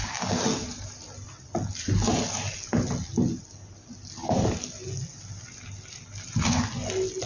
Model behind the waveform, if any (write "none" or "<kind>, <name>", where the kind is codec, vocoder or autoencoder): none